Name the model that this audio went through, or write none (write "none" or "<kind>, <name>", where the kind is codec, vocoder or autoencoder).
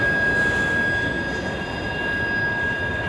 none